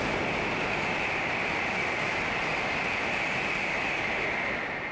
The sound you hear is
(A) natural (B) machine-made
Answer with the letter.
A